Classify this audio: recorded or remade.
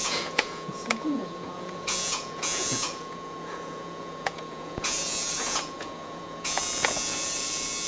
remade